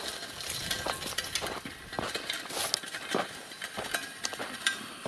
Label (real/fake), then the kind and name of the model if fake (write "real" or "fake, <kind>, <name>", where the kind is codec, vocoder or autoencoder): real